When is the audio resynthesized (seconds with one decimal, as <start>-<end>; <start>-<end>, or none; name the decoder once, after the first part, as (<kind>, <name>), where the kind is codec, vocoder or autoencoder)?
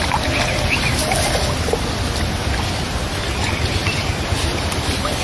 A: none